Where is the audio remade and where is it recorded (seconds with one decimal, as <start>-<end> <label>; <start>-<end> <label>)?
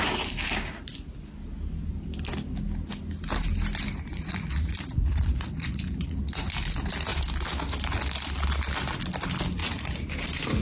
0.0-4.1 recorded; 4.1-6.2 remade; 6.2-9.6 recorded; 9.6-10.1 remade; 10.1-10.6 recorded